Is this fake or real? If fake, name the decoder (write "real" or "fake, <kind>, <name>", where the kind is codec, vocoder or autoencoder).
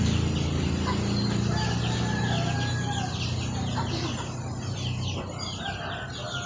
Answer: real